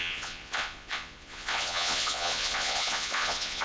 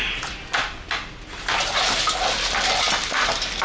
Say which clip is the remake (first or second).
first